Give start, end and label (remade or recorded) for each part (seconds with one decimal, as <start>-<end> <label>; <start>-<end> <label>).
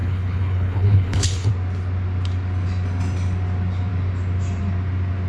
0.0-1.5 remade; 1.5-5.3 recorded